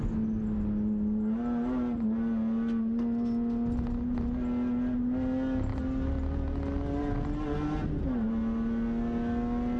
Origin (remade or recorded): recorded